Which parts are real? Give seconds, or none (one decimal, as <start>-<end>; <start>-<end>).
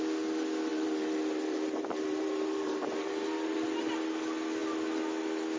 0.0-0.7; 3.1-5.6